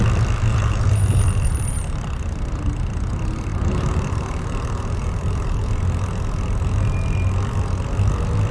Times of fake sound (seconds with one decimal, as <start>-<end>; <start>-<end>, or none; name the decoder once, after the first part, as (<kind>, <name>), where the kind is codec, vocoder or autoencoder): 0.5-2.5 (vocoder, BigVGAN v2); 3.5-5.7